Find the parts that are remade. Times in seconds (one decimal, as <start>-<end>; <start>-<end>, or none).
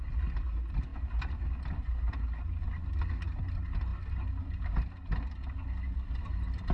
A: none